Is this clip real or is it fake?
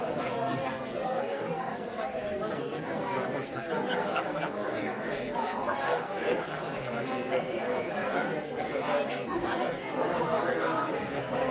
fake